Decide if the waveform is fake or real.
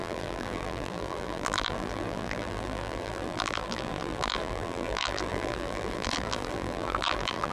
fake